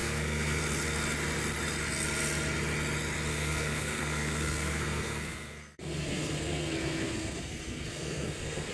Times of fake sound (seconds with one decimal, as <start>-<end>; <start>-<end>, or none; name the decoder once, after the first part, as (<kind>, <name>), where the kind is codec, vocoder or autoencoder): 0.0-0.6 (codec, SNAC); 3.3-8.7